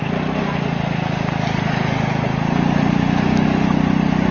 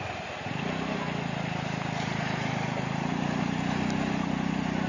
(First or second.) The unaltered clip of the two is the first